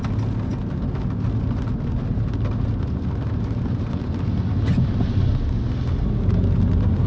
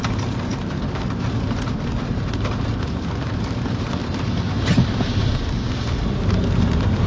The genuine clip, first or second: first